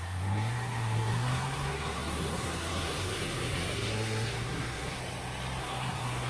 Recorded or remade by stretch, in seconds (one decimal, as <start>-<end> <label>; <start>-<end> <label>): 0.0-5.0 remade; 5.0-5.6 recorded; 5.6-6.3 remade